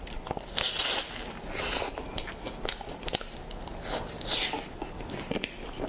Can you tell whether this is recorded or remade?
recorded